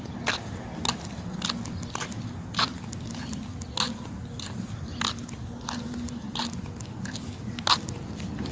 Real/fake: real